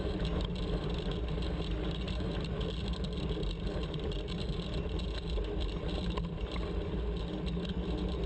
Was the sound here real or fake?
real